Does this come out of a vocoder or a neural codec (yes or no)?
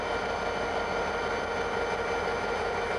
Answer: no